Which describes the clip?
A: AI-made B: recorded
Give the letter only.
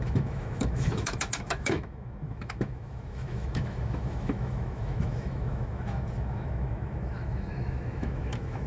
A